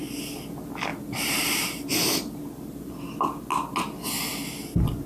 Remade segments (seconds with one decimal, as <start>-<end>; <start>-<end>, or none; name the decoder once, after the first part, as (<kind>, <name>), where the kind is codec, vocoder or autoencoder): 0.9-2.9 (vocoder, BigVGAN v2)